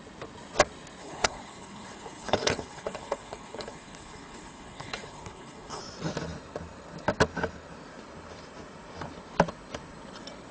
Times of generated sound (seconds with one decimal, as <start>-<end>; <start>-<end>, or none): 1.0-5.8